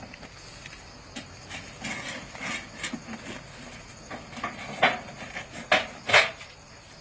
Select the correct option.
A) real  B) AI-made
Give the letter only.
A